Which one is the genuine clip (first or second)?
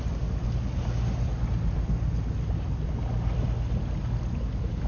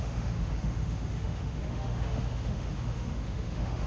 first